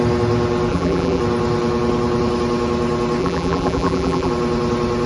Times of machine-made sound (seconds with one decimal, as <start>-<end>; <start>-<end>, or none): 0.7-1.2; 3.2-4.3